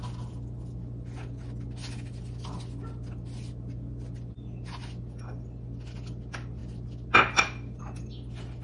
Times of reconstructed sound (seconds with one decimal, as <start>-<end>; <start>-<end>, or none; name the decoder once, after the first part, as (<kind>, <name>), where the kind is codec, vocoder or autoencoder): none